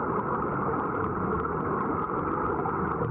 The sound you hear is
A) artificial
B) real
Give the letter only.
B